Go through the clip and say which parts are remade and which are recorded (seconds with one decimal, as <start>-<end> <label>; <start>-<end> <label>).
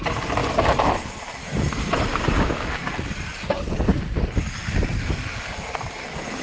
0.0-6.4 recorded